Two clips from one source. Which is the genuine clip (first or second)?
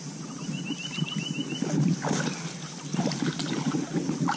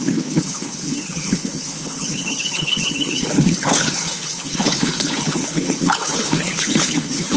first